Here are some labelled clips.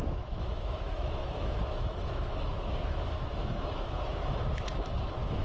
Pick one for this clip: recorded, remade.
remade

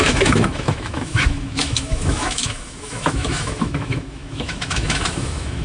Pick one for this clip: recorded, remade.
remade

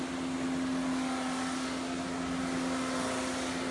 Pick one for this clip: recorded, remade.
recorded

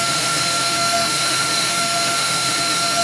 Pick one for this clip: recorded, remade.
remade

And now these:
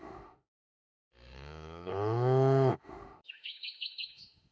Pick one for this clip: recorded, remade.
remade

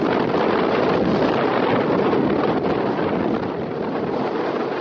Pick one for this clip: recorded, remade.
recorded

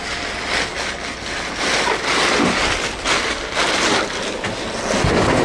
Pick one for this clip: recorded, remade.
recorded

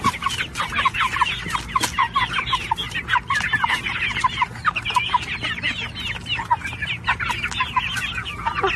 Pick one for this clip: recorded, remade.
recorded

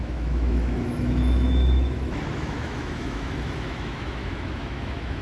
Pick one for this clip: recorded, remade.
remade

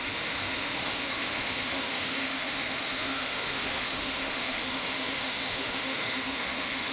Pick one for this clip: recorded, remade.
remade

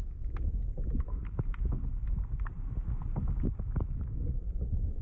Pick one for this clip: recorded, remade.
recorded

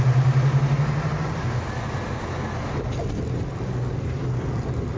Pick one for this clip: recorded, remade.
recorded